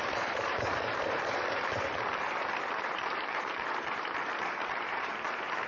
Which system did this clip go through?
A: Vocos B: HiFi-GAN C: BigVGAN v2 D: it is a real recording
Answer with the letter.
C